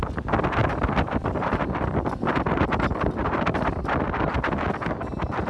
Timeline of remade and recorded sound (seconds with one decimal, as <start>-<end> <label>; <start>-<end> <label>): 0.0-0.6 recorded; 0.6-3.9 remade; 3.9-5.5 recorded